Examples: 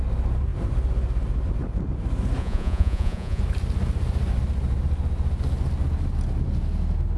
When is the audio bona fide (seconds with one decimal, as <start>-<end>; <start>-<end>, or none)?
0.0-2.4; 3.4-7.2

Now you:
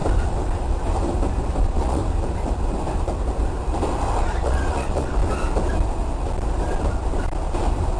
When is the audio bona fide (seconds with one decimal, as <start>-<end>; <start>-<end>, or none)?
0.0-1.6; 2.0-4.2; 5.2-8.0

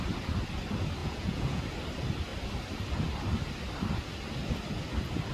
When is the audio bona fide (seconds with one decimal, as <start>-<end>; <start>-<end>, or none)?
0.0-1.0; 1.6-5.3

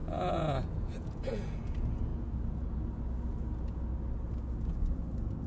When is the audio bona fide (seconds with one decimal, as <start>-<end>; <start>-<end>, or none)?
1.7-2.1; 2.7-5.5

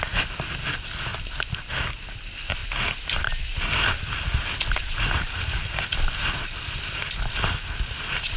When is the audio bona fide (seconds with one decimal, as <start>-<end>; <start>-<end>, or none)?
0.0-8.4